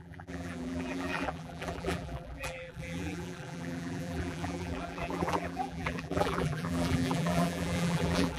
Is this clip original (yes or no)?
no